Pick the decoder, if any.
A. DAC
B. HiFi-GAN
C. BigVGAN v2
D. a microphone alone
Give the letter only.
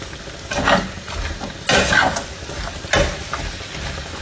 D